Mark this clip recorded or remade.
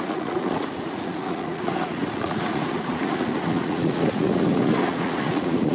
remade